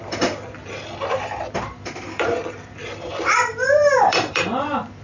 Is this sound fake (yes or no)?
yes